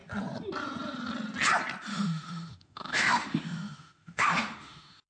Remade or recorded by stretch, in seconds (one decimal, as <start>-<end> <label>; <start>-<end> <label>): 0.0-1.9 recorded; 1.9-5.1 remade